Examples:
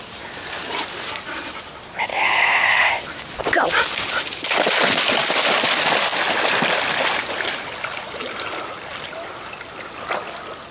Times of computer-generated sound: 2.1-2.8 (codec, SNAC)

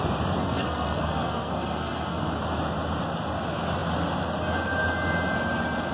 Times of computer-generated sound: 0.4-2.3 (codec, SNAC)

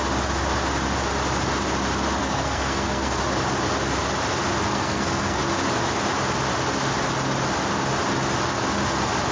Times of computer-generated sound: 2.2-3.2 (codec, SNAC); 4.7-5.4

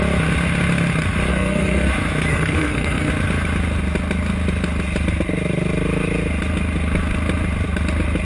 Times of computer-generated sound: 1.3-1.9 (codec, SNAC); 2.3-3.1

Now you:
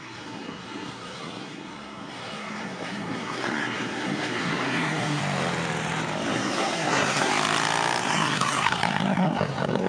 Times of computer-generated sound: 0.0-5.2 (codec, SNAC); 6.3-7.3; 8.0-9.9